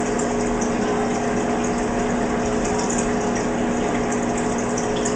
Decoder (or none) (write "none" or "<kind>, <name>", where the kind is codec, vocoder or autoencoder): none